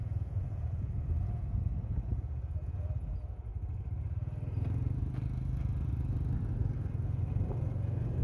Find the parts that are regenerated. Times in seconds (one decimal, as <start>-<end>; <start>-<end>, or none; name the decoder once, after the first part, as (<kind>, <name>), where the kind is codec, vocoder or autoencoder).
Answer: 0.0-3.5 (vocoder, Vocos)